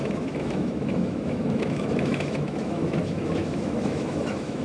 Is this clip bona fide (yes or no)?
no